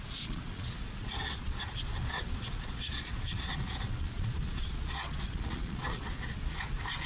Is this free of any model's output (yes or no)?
no